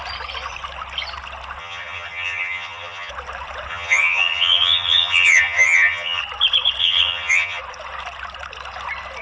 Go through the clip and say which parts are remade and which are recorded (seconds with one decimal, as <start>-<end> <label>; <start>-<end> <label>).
0.0-1.6 recorded; 1.6-3.1 remade; 3.1-3.7 recorded; 3.7-6.2 remade; 6.2-6.8 recorded; 6.8-7.6 remade; 7.6-9.2 recorded